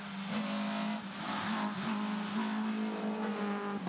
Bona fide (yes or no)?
yes